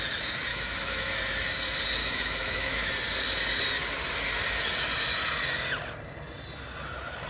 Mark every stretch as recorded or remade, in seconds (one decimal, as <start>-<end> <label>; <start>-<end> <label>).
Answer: 0.0-0.5 recorded; 0.5-1.2 remade; 1.2-2.0 recorded; 2.0-2.9 remade; 2.9-7.3 recorded